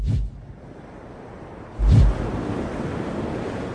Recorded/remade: recorded